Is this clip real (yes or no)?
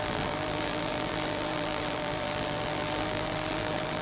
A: no